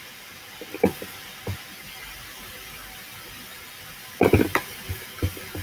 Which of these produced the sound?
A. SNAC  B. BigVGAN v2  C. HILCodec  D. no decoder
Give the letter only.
B